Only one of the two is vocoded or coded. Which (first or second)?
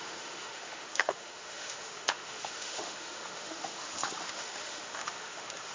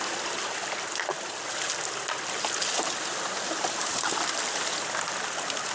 first